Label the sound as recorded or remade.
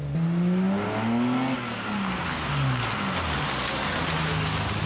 recorded